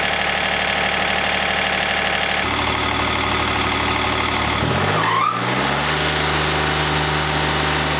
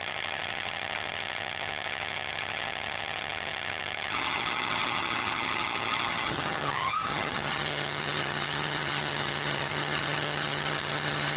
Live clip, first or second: first